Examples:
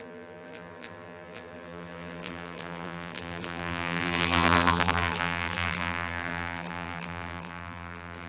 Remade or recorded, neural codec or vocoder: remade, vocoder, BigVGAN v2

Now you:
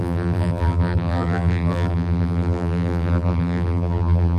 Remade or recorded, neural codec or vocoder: remade, vocoder, BigVGAN v2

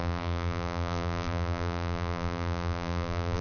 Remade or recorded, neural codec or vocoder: remade, vocoder, BigVGAN v2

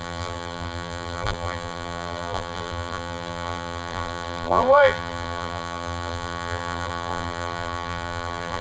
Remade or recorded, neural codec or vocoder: remade, vocoder, BigVGAN v2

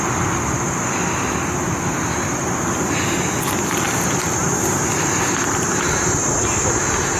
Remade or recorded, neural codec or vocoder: recorded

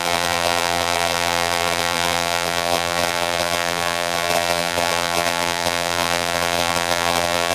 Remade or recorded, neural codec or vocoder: remade, vocoder, BigVGAN v2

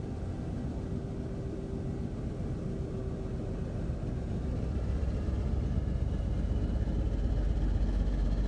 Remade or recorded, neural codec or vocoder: recorded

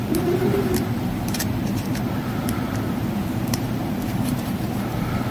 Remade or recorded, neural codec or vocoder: remade, vocoder, BigVGAN v2